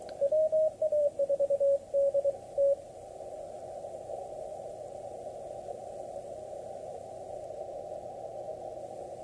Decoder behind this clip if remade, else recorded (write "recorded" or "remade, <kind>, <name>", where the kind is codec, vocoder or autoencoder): recorded